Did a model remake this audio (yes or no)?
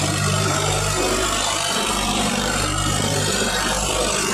yes